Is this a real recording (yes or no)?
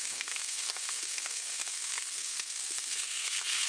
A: no